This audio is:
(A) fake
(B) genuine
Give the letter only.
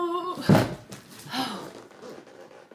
B